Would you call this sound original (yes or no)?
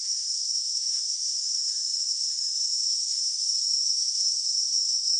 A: no